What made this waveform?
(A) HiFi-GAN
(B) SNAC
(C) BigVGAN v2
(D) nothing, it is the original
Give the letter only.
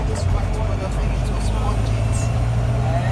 D